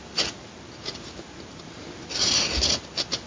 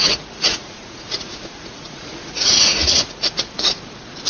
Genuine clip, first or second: first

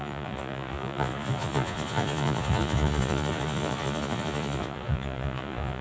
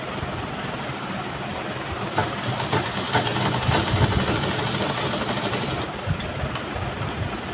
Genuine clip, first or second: second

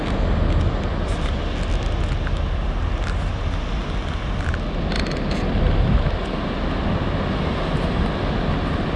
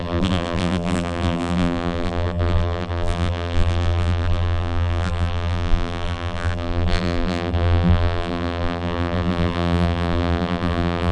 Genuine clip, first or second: first